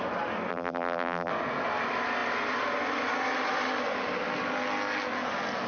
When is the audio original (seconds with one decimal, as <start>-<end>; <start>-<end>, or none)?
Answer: 0.0-0.5; 1.3-5.7